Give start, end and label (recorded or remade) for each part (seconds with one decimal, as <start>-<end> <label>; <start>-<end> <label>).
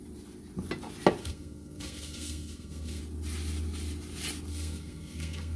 0.0-1.2 recorded; 1.2-3.0 remade; 3.0-4.5 recorded; 4.5-5.6 remade